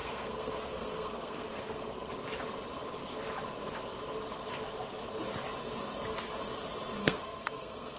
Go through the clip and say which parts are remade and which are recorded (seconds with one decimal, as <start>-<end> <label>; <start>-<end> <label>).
0.0-2.1 remade; 2.1-7.0 recorded; 7.0-8.0 remade